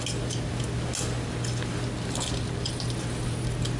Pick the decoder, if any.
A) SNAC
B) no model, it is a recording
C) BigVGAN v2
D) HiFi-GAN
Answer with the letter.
B